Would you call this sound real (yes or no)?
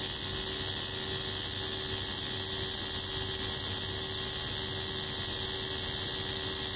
yes